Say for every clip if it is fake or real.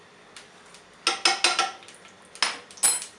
real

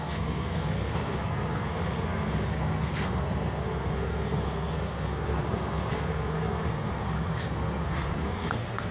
fake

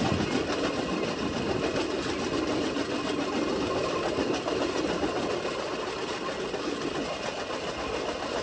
real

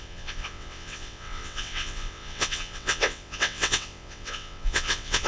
fake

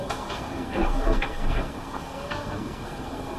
fake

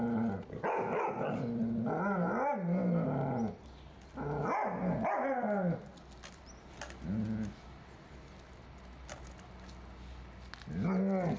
real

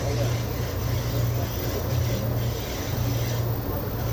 real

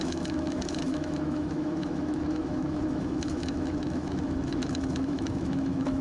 fake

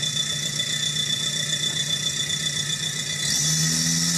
real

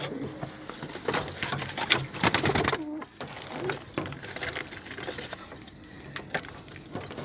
real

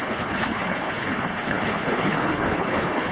fake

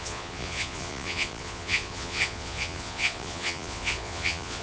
fake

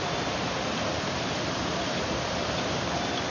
fake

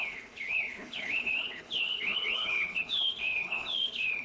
fake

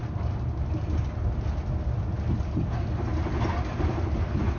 real